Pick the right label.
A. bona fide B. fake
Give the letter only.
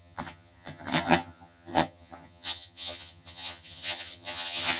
B